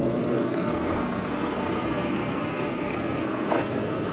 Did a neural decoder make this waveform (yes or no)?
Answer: yes